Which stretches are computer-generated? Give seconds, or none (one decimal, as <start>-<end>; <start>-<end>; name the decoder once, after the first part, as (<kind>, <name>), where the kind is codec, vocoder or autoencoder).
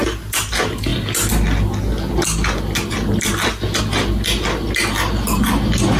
none